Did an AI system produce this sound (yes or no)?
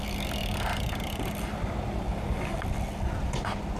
no